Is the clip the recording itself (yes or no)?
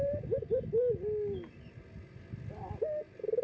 yes